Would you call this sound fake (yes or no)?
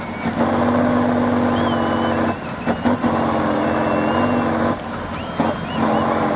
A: no